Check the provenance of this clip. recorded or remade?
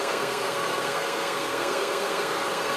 remade